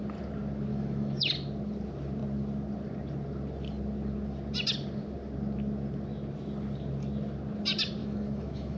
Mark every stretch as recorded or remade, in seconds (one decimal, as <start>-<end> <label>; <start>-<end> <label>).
0.0-0.7 recorded; 0.7-1.3 remade; 1.3-8.0 recorded; 8.0-8.8 remade